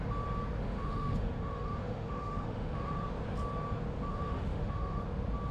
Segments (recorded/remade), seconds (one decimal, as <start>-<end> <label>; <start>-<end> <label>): 0.0-0.6 recorded; 0.6-3.1 remade; 3.1-4.1 recorded; 4.1-5.0 remade; 5.0-5.5 recorded